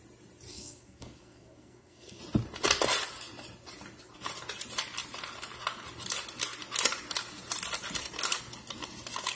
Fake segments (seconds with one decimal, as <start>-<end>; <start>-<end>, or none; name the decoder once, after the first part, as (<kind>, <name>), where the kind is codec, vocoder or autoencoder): 0.5-2.2 (codec, SNAC)